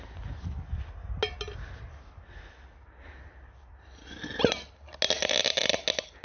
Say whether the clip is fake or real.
real